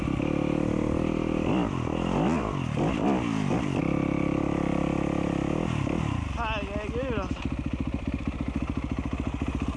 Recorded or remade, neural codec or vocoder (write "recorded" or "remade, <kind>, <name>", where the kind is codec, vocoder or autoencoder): recorded